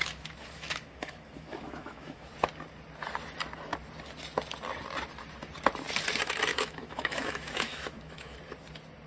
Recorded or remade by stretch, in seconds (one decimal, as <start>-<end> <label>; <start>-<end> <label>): 0.0-2.3 remade; 2.3-6.5 recorded; 6.5-8.4 remade; 8.4-9.1 recorded